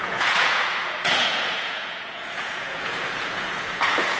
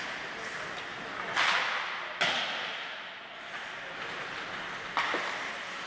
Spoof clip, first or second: first